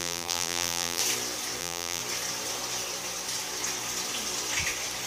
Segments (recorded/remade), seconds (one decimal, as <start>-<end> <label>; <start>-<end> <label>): 0.0-1.0 remade; 1.0-1.6 recorded; 1.6-2.0 remade; 2.0-5.1 recorded